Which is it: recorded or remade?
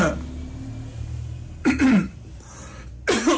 recorded